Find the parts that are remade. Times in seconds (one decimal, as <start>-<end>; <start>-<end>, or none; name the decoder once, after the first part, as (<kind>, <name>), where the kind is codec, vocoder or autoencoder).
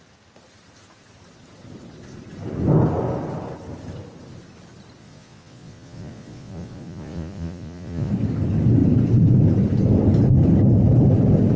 5.0-8.1 (vocoder, Vocos)